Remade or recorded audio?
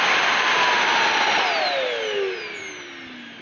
recorded